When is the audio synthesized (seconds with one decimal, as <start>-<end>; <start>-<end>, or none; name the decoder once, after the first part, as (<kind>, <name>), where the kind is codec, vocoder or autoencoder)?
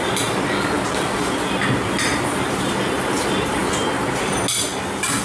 2.1-2.7 (vocoder, BigVGAN v2)